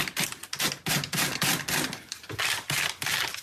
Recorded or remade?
recorded